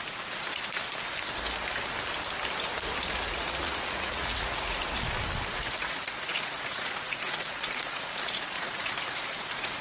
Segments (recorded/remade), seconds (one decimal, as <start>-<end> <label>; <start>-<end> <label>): 0.0-0.8 remade; 0.8-3.1 recorded; 3.1-4.8 remade; 4.8-5.6 recorded; 5.6-9.8 remade

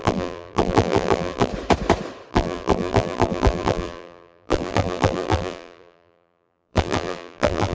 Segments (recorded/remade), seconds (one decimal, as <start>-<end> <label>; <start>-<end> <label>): 0.0-1.5 remade; 1.5-2.3 recorded; 2.3-7.7 remade

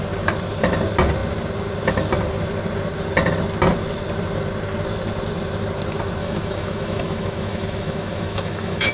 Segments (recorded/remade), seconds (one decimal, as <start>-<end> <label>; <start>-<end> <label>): 0.0-6.2 recorded; 6.2-8.9 remade

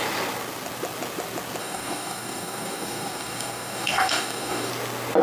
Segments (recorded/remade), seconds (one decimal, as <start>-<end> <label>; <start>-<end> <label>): 0.0-1.6 recorded; 1.6-4.7 remade; 4.7-5.2 recorded

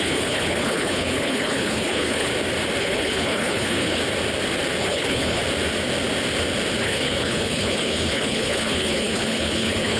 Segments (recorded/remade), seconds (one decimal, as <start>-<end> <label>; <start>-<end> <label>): 0.0-2.3 remade; 2.3-2.8 recorded; 2.8-4.0 remade; 4.0-4.8 recorded; 4.8-5.4 remade; 5.4-6.8 recorded; 6.8-10.0 remade

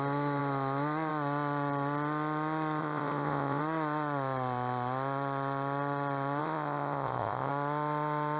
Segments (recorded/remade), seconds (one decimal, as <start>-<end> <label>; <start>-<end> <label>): 0.0-2.8 recorded; 2.8-3.6 remade; 3.6-6.4 recorded; 6.4-7.5 remade; 7.5-8.4 recorded